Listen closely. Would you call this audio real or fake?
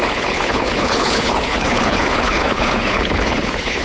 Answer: fake